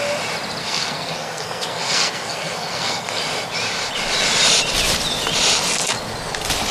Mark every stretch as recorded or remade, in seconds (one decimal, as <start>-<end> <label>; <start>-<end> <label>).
0.0-0.6 recorded; 0.6-3.2 remade; 3.2-6.7 recorded

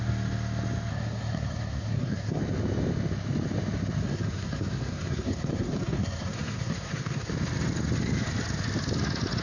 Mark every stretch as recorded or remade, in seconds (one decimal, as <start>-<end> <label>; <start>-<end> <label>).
0.0-0.9 recorded; 0.9-2.4 remade; 2.4-4.0 recorded; 4.0-7.3 remade; 7.3-9.4 recorded

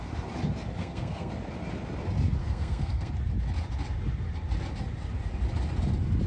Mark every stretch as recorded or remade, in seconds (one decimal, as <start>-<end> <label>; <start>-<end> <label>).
0.0-0.8 recorded; 0.8-1.3 remade; 1.3-2.4 recorded; 2.4-3.1 remade; 3.1-6.3 recorded